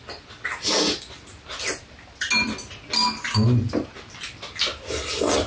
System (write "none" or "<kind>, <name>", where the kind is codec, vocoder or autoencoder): none